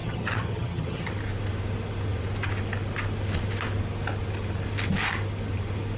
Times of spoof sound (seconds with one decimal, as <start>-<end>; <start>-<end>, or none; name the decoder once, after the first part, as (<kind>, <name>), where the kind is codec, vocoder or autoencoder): 0.0-1.1 (vocoder, HiFi-GAN)